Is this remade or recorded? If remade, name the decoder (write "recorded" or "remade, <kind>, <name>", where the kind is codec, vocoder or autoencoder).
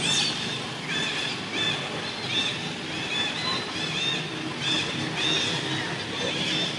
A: recorded